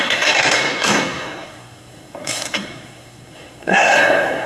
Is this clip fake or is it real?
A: fake